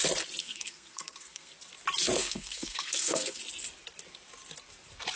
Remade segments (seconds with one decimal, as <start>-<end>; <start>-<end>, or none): 0.4-1.5; 2.2-3.4